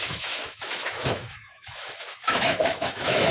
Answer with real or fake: fake